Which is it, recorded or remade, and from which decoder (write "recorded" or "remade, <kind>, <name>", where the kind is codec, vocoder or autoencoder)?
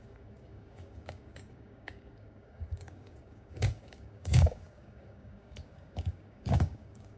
remade, codec, DAC